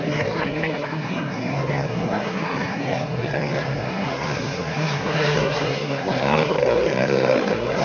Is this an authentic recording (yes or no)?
no